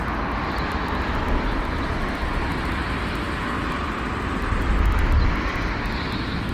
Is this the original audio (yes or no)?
yes